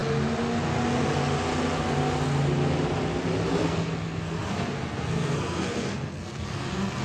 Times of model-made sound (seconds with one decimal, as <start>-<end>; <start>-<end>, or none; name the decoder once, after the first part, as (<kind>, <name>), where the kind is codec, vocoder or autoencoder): 3.5-7.0 (codec, SNAC)